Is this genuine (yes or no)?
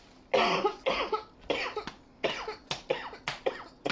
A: yes